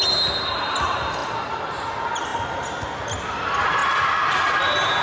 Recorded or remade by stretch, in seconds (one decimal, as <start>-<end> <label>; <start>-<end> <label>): 0.0-5.0 recorded